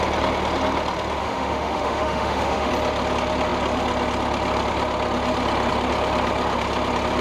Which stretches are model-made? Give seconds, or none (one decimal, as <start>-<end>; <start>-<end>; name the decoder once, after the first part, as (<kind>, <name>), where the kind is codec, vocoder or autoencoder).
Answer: 1.2-2.7 (autoencoder, DAC-VAE)